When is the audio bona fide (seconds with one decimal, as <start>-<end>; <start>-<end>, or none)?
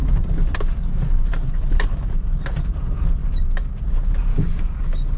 0.0-4.3; 4.8-5.2